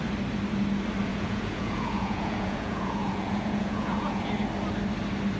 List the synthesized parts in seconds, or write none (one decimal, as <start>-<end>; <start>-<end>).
1.1-4.3